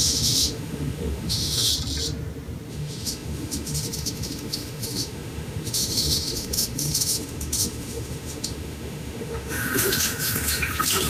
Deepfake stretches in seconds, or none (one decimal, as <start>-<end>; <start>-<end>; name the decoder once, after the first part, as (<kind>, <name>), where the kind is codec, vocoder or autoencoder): 0.0-1.7 (autoencoder, DAC-VAE); 2.7-11.1